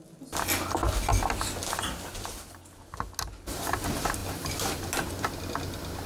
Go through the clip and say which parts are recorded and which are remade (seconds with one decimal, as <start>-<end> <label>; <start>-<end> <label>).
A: 0.0-4.2 recorded; 4.2-4.8 remade; 4.8-6.1 recorded